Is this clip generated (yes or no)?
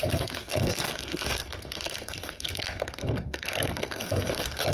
yes